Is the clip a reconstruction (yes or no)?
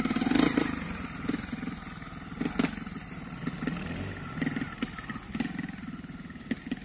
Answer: no